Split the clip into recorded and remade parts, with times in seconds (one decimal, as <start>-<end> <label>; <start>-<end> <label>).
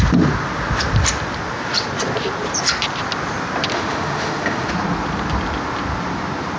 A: 0.0-3.7 recorded; 3.7-4.7 remade; 4.7-6.6 recorded